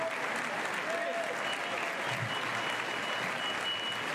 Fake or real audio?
real